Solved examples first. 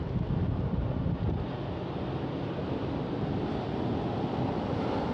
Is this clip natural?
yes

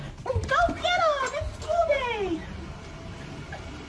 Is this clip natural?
yes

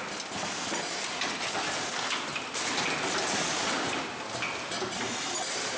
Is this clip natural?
yes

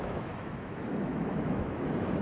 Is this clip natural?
no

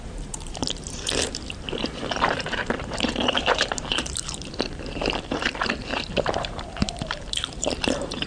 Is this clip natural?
no